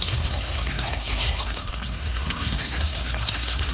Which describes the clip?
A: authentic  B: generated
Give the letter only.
B